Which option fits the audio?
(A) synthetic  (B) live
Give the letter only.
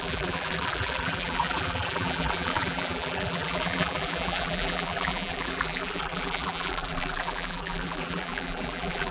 A